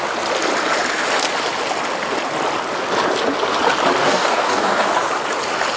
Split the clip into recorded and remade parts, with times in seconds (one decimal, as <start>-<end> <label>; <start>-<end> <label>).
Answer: 0.0-4.0 recorded; 4.0-4.9 remade; 4.9-5.8 recorded